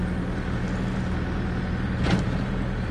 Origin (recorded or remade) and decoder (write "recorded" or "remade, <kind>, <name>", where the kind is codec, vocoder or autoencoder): recorded